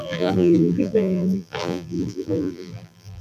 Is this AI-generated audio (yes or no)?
yes